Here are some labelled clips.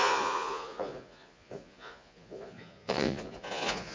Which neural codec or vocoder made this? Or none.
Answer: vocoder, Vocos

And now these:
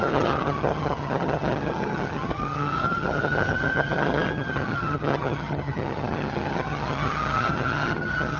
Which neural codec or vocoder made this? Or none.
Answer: vocoder, HiFi-GAN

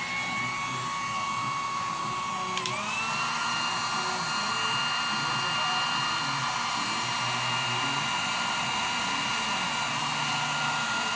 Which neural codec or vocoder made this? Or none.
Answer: none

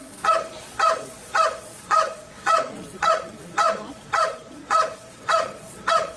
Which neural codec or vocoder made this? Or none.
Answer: vocoder, Vocos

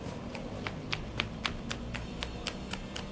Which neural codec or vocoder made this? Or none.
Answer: none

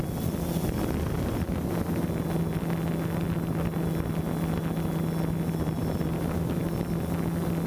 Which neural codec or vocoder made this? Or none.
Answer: none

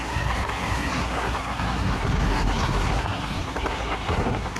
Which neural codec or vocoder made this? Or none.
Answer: codec, SNAC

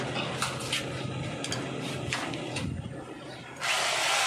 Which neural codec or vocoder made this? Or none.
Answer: none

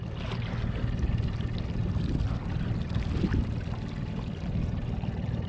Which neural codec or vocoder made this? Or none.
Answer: none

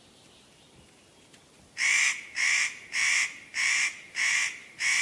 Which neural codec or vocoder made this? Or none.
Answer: vocoder, BigVGAN v2